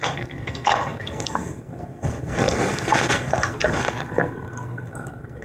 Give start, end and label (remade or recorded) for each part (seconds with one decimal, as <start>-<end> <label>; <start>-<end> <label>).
0.0-5.4 remade

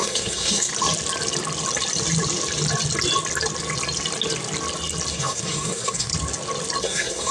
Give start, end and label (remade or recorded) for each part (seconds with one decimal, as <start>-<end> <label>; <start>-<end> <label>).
0.0-0.7 remade; 0.7-5.1 recorded; 5.1-6.1 remade; 6.1-6.8 recorded; 6.8-7.3 remade

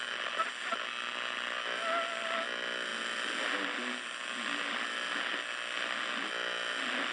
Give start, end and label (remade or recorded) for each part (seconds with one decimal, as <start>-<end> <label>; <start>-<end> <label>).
0.0-7.1 recorded

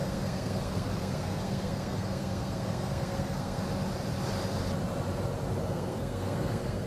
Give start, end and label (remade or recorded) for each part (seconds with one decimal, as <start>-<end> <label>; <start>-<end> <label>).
0.0-3.6 remade; 3.6-5.7 recorded; 5.7-6.9 remade